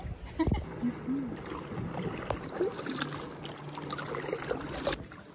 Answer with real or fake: real